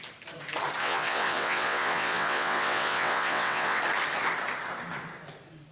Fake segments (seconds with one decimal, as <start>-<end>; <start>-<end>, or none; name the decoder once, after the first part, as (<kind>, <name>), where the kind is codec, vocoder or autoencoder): 0.8-3.8 (vocoder, WaveNeXt)